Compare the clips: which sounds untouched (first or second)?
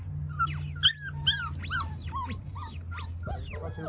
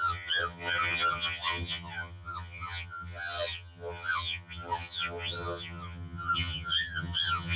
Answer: first